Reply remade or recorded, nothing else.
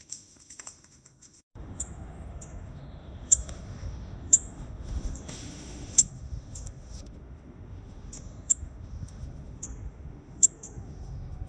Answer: remade